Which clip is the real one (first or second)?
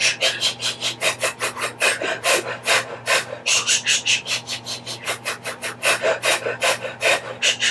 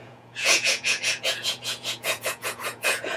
first